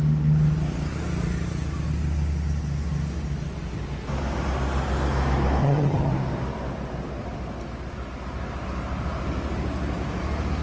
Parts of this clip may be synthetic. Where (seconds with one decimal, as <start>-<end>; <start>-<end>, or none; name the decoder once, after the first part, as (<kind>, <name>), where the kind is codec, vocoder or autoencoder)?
5.6-6.1 (vocoder, HiFi-GAN)